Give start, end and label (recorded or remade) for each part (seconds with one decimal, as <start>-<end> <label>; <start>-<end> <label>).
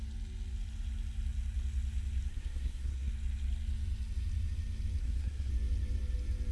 0.0-2.3 recorded; 2.3-3.1 remade; 3.1-5.0 recorded; 5.0-5.5 remade; 5.5-6.5 recorded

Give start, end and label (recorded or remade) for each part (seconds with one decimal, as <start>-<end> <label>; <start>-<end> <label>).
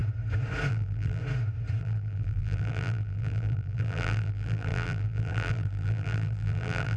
0.0-0.7 recorded; 0.7-1.2 remade; 1.2-1.8 recorded; 1.8-7.0 remade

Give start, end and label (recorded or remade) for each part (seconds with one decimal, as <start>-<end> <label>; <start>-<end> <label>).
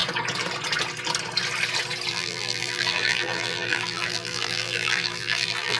0.0-2.1 recorded; 2.1-5.8 remade